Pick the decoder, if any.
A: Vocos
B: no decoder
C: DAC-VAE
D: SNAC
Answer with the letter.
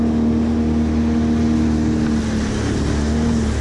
B